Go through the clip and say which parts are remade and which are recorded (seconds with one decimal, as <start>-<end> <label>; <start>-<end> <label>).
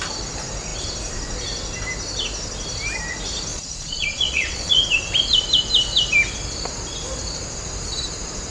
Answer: 0.0-3.5 recorded; 3.5-4.7 remade; 4.7-8.5 recorded